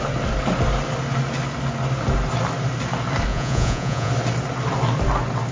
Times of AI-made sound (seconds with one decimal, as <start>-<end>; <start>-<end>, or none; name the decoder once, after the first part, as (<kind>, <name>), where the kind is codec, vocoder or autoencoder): 3.3-4.1 (vocoder, Vocos)